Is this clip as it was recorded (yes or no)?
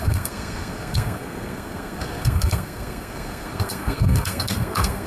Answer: no